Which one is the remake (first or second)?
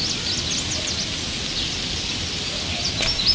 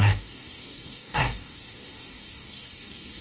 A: second